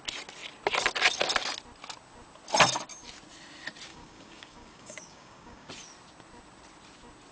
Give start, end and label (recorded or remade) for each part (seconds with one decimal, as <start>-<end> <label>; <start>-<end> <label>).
0.0-3.9 recorded; 3.9-5.7 remade; 5.7-7.3 recorded